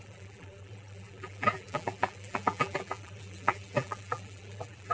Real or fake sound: fake